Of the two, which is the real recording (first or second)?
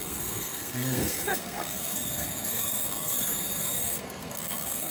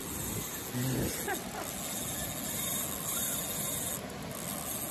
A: second